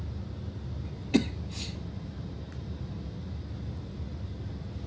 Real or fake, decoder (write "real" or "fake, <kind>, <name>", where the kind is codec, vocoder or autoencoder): real